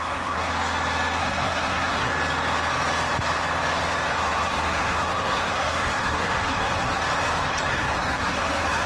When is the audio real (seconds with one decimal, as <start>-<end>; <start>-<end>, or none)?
0.5-1.2; 2.1-4.1; 7.0-7.7